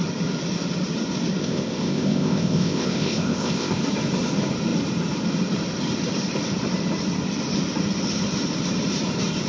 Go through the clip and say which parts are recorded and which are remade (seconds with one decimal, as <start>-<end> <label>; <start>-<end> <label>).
0.0-1.4 recorded; 1.4-3.8 remade; 3.8-9.5 recorded